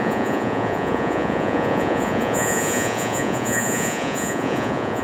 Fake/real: fake